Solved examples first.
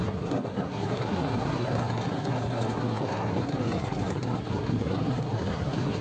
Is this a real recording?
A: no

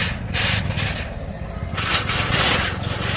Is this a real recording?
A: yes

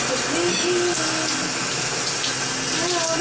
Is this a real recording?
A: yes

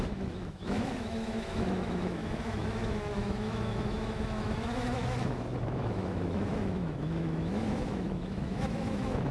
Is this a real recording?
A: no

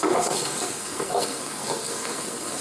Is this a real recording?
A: no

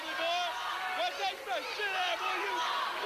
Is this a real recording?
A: yes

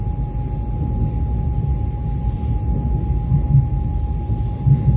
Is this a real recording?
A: yes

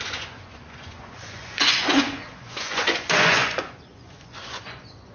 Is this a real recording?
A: no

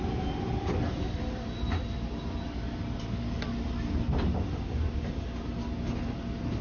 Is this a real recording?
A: yes